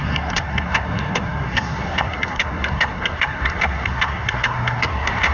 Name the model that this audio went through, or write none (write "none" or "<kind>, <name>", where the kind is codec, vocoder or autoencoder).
codec, SNAC